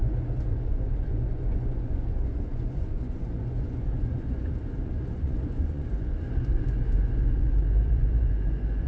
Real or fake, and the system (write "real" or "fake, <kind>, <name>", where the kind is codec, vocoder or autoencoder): fake, vocoder, Vocos